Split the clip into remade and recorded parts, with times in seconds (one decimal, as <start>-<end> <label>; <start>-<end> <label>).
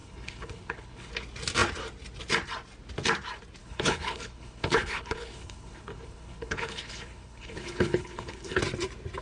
0.0-1.1 remade; 1.1-3.6 recorded; 3.6-8.6 remade; 8.6-9.2 recorded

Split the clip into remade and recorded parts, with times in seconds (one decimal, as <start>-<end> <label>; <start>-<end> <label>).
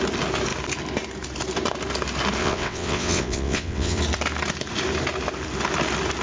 0.0-2.4 recorded; 2.4-4.0 remade; 4.0-6.2 recorded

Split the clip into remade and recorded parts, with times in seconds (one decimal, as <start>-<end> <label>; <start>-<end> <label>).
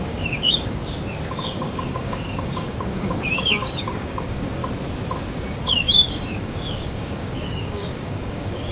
0.0-0.8 remade; 0.8-1.3 recorded; 1.3-4.6 remade; 4.6-5.6 recorded; 5.6-8.7 remade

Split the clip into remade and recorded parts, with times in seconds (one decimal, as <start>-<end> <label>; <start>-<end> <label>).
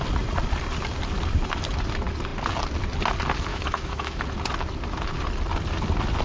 0.0-3.5 recorded; 3.5-4.2 remade; 4.2-6.2 recorded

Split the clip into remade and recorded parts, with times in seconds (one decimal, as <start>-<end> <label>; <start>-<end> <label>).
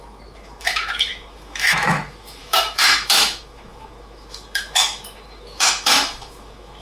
0.0-6.8 remade